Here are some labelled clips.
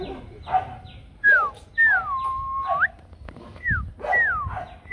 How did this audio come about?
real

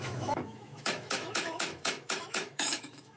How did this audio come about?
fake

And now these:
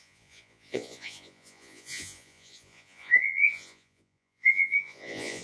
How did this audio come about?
fake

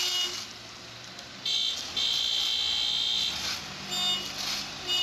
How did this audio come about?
real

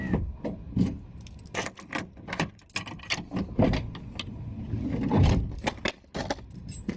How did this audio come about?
real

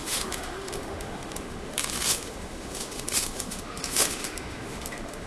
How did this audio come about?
fake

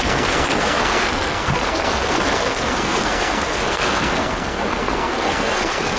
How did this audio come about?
fake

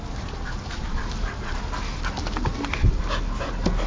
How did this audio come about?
real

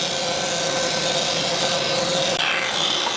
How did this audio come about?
real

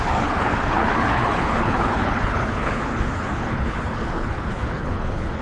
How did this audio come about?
fake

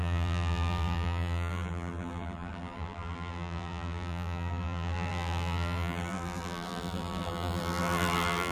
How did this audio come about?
fake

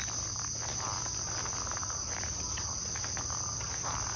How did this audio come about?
real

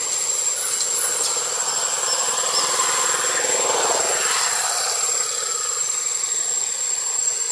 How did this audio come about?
real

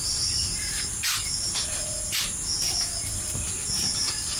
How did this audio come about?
real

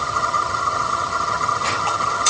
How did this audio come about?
fake